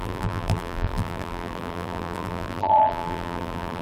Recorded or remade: remade